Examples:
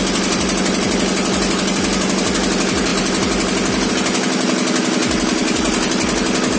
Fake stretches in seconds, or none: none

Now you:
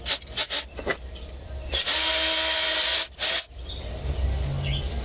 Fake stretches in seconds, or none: none

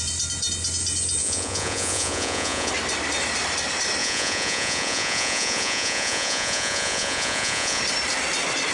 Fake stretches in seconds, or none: 1.2-2.7 (vocoder, Vocos); 4.0-7.8

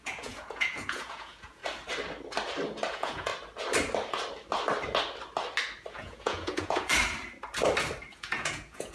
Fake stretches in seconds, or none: 0.0-1.6 (vocoder, Vocos); 2.9-3.3; 5.9-6.9; 8.1-8.9

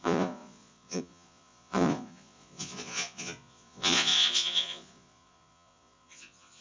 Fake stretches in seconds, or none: 0.0-6.6 (vocoder, Vocos)

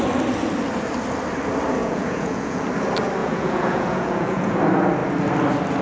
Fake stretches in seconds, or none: 1.8-2.6 (vocoder, Vocos); 3.2-4.6

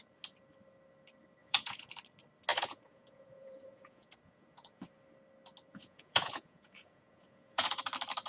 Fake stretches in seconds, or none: 1.4-1.9 (vocoder, Vocos); 2.5-4.8; 5.7-7.8